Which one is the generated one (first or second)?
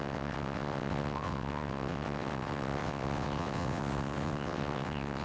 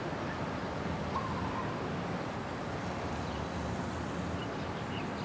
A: first